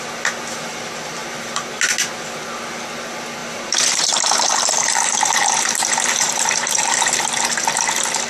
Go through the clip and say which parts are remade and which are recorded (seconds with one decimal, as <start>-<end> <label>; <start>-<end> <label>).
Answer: 0.0-3.4 recorded; 3.4-7.2 remade; 7.2-8.3 recorded